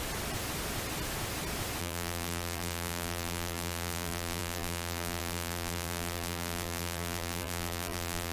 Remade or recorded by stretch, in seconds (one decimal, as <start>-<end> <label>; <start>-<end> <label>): 0.0-1.8 recorded; 1.8-8.3 remade